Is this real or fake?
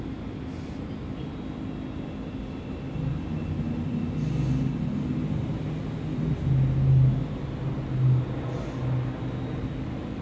real